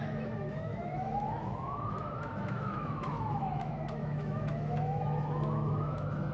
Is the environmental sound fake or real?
fake